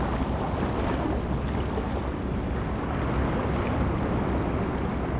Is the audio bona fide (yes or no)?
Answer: yes